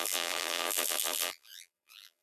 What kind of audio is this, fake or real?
fake